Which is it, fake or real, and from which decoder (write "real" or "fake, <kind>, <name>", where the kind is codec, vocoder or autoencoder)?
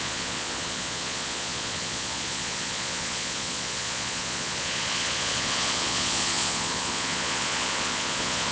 fake, vocoder, Vocos